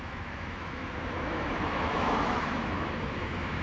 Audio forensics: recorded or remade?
remade